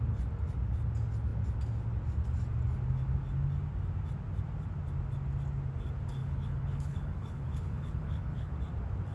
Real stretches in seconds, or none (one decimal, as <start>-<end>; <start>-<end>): 0.0-6.2; 8.5-9.1